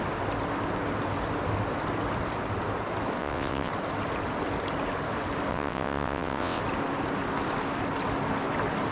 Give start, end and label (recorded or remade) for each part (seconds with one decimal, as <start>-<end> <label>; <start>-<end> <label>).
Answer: 0.0-3.2 recorded; 3.2-3.7 remade; 3.7-5.5 recorded; 5.5-6.6 remade; 6.6-8.9 recorded